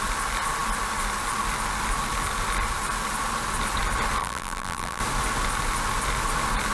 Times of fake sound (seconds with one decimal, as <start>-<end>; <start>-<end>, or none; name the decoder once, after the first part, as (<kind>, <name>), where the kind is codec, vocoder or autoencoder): 4.2-5.0 (vocoder, BigVGAN v2)